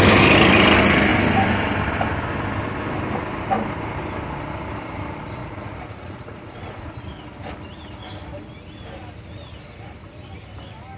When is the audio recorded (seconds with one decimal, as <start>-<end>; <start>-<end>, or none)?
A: 0.0-5.4; 7.1-11.0